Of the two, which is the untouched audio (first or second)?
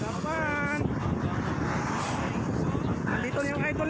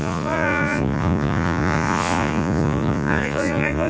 first